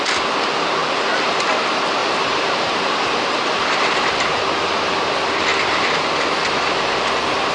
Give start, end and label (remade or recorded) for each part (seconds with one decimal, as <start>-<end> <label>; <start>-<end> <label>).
0.0-0.8 recorded; 0.8-1.4 remade; 1.4-2.0 recorded; 2.0-4.4 remade; 4.4-7.5 recorded